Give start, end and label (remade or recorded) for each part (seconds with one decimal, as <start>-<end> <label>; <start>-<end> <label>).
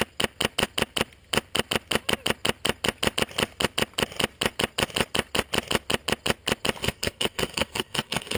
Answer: 0.0-6.8 recorded; 6.8-8.4 remade